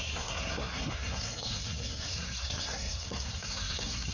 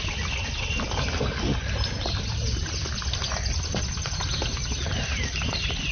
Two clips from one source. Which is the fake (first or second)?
first